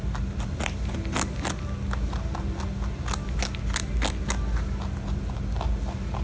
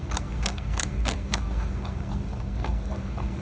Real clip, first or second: first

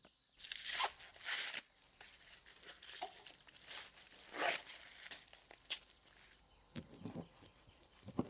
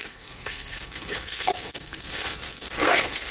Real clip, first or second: first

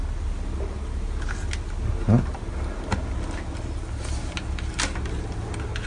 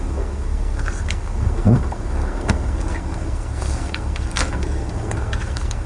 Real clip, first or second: first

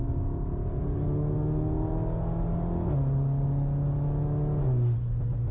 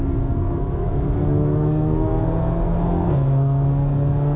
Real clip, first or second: first